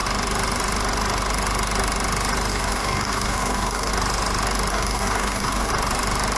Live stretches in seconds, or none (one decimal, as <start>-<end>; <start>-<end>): 0.0-2.5; 3.9-4.7; 5.7-6.4